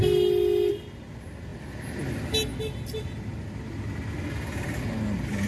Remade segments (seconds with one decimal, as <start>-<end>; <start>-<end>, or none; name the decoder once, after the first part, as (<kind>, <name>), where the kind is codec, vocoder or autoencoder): none